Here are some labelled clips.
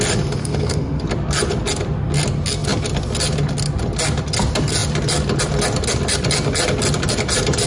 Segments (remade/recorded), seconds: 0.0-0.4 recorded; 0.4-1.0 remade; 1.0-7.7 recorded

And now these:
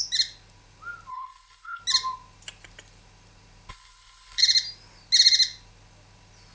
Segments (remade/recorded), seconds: 0.0-1.1 recorded; 1.1-1.8 remade; 1.8-3.7 recorded; 3.7-4.4 remade; 4.4-6.5 recorded

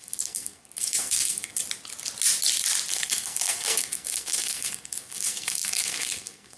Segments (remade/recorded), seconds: 0.0-1.6 remade; 1.6-2.9 recorded; 2.9-6.6 remade

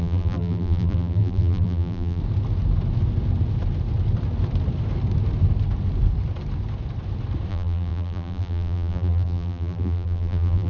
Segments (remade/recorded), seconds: 0.0-2.2 remade; 2.2-7.5 recorded; 7.5-10.7 remade